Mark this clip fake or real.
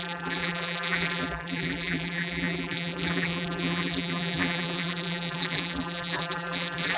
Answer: fake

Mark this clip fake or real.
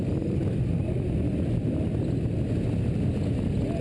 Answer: real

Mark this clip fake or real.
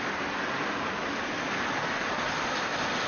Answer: real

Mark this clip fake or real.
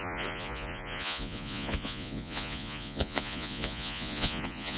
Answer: fake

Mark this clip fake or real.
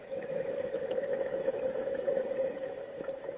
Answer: fake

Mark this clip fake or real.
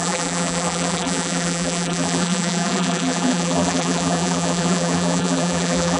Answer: fake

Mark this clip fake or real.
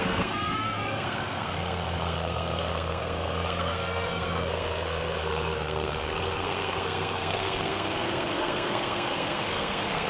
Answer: fake